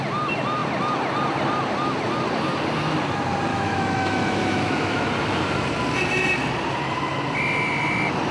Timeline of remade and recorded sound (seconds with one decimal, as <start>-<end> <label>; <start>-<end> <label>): 0.0-3.5 recorded; 3.5-5.1 remade; 5.1-8.3 recorded

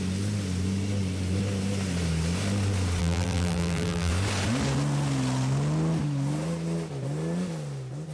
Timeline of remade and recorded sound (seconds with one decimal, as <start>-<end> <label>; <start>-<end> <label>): 0.0-3.0 recorded; 3.0-4.1 remade; 4.1-8.1 recorded

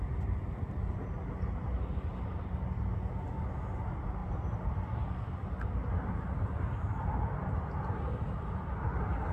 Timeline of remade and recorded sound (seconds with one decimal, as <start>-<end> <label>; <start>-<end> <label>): 0.0-9.3 recorded

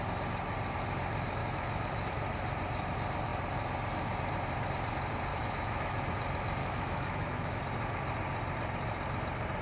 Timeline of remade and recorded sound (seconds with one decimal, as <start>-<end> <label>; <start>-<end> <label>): 0.0-1.4 recorded; 1.4-2.1 remade; 2.1-5.3 recorded; 5.3-6.0 remade; 6.0-6.6 recorded; 6.6-7.6 remade; 7.6-9.6 recorded

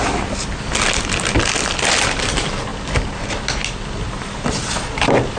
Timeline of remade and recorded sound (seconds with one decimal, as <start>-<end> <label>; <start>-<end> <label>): 0.0-5.4 recorded